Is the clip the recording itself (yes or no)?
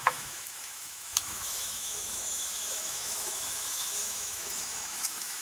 no